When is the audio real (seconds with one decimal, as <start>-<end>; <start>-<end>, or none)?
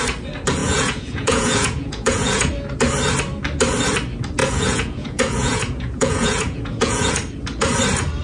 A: 0.0-0.6; 2.5-4.4; 7.1-8.2